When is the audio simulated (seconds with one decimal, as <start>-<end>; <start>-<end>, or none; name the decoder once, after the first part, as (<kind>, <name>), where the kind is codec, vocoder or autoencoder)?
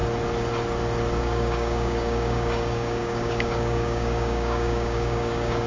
1.2-5.7 (codec, DAC)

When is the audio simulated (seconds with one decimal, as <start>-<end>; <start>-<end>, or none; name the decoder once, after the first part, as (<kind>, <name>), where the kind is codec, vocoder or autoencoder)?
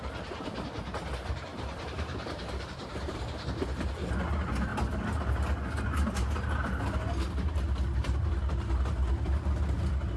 1.5-3.2 (vocoder, BigVGAN v2)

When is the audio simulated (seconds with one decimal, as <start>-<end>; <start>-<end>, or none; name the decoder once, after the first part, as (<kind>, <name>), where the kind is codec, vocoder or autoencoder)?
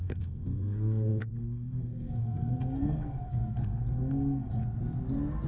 0.0-4.6 (codec, SNAC)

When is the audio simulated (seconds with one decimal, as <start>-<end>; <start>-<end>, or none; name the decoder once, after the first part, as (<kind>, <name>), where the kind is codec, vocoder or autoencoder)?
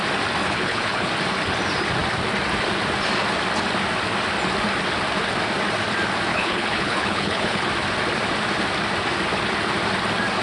0.4-1.1 (codec, HILCodec); 6.3-7.7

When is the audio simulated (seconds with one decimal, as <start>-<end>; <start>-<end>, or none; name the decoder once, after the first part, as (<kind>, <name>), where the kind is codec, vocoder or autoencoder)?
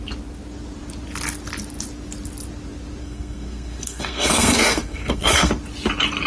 3.0-5.5 (codec, SNAC)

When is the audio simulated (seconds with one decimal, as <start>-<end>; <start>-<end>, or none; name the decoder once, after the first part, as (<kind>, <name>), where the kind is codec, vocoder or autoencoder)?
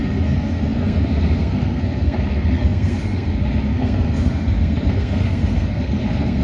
0.0-6.4 (codec, SNAC)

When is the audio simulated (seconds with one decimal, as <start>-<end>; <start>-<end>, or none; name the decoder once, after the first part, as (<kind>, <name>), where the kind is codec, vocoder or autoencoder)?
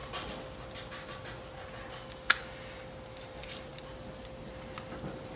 none